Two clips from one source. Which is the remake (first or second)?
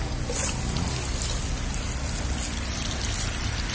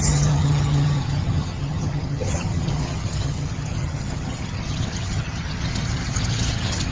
second